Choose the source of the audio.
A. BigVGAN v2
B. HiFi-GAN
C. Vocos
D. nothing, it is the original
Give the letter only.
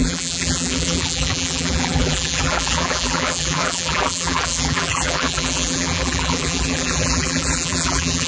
A